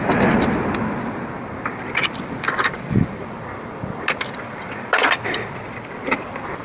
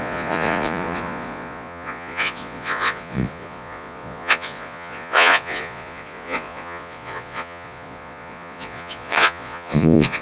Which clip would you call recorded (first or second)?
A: first